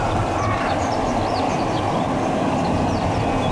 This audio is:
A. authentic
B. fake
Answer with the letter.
A